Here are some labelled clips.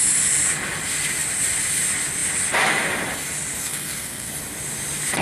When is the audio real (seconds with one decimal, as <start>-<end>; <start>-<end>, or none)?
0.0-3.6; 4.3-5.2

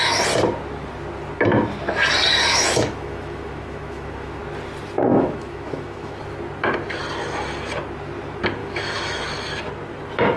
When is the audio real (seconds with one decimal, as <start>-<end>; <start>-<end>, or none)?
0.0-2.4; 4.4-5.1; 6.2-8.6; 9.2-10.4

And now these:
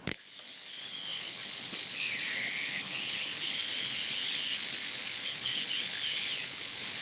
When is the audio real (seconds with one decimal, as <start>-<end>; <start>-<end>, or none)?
none

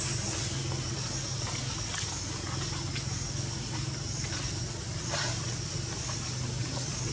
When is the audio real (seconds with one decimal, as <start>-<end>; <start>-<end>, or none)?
0.0-7.1

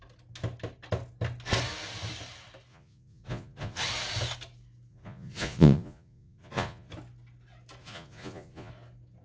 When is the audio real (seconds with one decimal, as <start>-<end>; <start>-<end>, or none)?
0.0-2.7; 3.8-4.9; 6.9-7.8; 8.7-9.2